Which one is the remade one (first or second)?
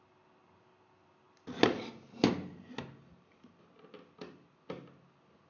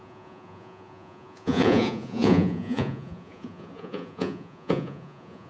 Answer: second